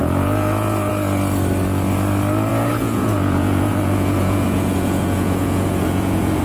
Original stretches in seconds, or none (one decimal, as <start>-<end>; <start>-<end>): 0.9-2.5